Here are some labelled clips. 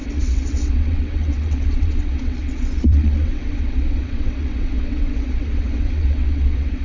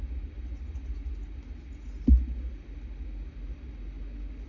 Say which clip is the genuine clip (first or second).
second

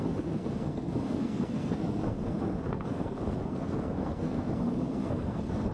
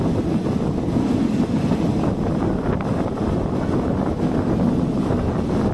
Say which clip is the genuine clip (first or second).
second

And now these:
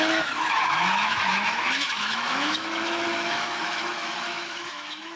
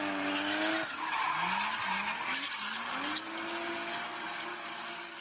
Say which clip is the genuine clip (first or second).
second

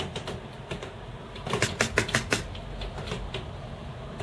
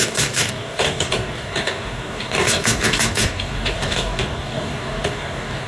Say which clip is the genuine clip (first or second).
first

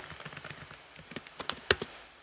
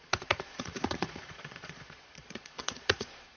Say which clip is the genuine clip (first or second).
first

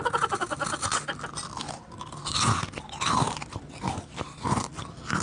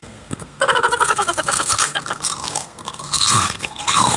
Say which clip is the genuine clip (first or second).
first